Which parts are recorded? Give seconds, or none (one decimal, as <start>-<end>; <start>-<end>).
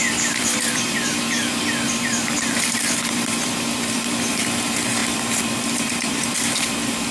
none